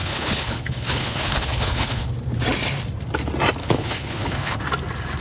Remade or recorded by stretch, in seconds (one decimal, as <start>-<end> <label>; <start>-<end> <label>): 0.0-2.1 remade; 2.1-3.6 recorded; 3.6-4.6 remade; 4.6-5.2 recorded